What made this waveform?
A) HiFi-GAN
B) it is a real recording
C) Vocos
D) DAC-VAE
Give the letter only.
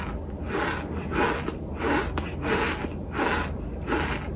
B